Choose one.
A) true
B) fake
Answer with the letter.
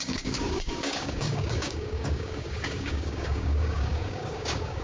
B